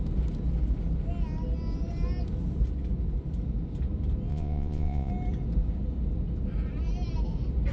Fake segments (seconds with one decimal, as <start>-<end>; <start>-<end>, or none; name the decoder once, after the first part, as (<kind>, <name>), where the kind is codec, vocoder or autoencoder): 4.3-5.1 (vocoder, Vocos)